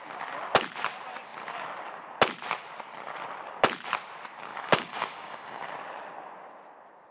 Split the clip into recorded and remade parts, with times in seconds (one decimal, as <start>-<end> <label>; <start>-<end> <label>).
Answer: 0.0-4.5 recorded; 4.5-5.7 remade; 5.7-7.1 recorded